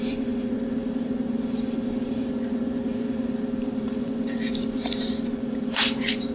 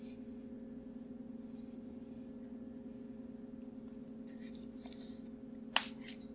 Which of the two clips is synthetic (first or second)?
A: first